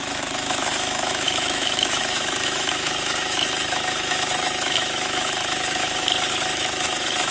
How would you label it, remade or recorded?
remade